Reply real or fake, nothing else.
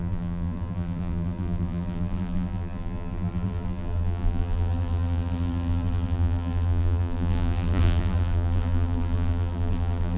fake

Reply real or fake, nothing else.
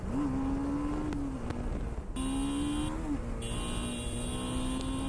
real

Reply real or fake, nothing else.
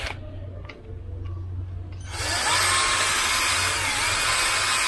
real